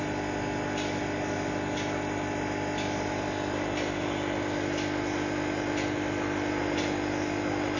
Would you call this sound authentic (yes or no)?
yes